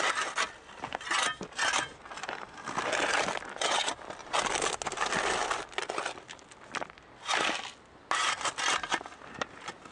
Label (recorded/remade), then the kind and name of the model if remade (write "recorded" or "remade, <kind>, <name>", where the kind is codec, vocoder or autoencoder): recorded